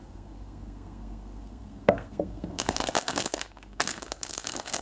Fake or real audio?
fake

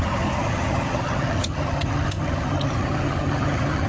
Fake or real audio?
fake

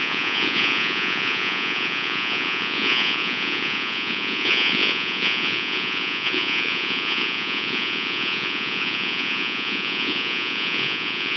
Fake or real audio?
fake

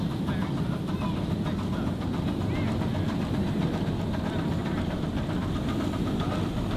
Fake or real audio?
real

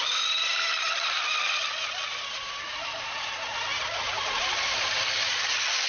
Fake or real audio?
real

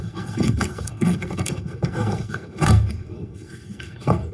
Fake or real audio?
fake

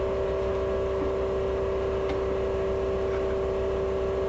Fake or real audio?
real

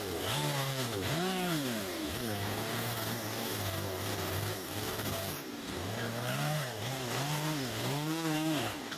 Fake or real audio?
fake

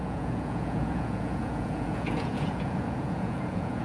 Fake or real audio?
fake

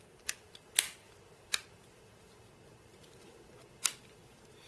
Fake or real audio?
real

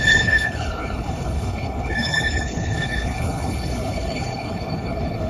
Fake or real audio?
fake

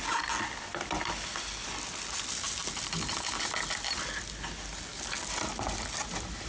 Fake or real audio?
real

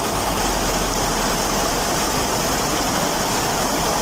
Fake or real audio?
real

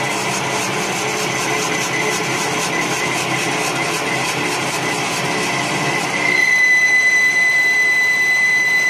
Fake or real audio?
real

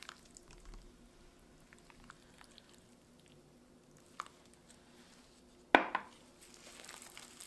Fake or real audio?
real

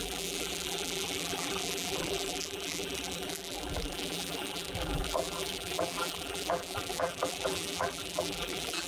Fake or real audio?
fake